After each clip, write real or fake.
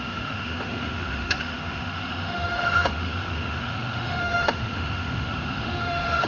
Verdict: fake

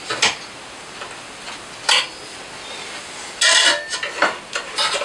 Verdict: real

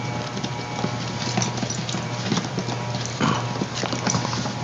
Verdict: fake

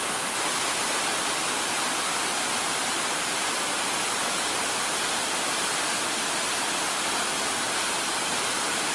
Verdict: real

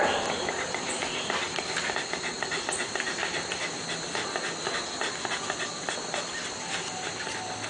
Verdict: real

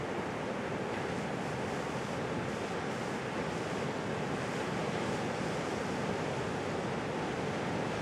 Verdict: real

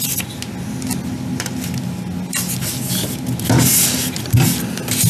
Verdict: real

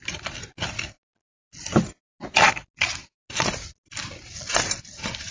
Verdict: real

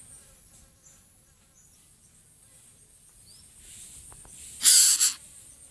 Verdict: real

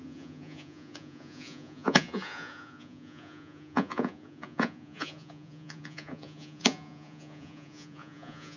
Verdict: fake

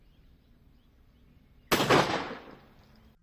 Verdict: real